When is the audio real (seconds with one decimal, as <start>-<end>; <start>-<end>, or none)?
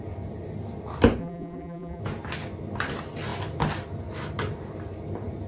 0.0-1.2; 2.0-5.5